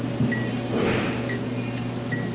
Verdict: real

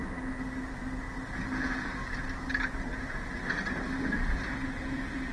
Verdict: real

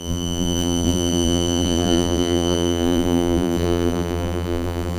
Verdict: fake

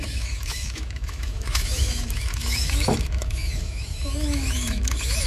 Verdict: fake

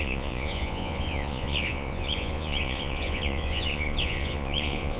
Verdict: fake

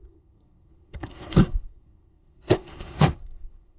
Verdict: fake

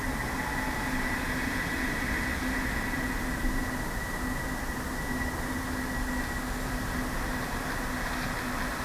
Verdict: real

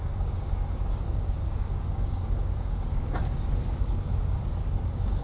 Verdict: fake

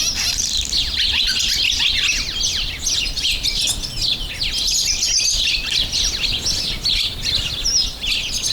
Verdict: real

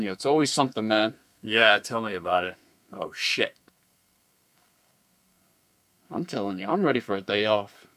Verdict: fake